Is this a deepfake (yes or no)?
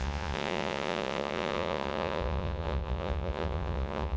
yes